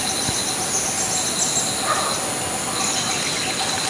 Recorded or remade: recorded